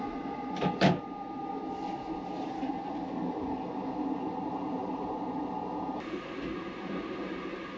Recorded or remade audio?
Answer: recorded